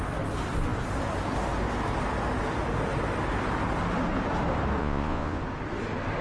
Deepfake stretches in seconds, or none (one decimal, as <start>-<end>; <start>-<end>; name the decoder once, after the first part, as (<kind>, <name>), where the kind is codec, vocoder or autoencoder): 4.8-5.4 (vocoder, Vocos)